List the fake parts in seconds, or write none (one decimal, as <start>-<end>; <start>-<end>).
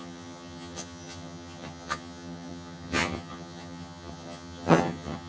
0.0-5.3